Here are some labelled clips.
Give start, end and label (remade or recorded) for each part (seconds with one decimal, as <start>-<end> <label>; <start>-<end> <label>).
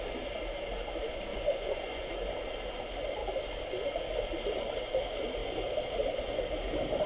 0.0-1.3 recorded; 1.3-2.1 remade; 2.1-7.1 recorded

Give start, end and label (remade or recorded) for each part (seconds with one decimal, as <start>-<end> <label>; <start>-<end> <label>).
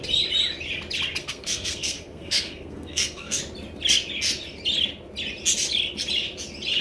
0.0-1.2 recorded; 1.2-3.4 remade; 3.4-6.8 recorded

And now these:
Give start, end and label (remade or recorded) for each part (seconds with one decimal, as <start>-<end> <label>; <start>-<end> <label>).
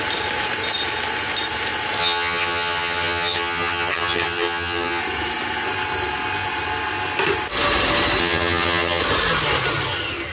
0.0-2.0 recorded; 2.0-5.0 remade; 5.0-8.2 recorded; 8.2-9.0 remade; 9.0-10.3 recorded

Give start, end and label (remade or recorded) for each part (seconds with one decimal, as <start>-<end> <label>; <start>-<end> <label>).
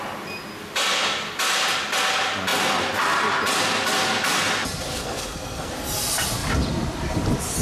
0.0-5.0 recorded; 5.0-5.7 remade; 5.7-7.6 recorded